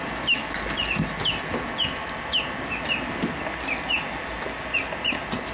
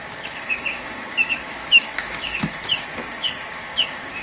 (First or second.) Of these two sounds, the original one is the first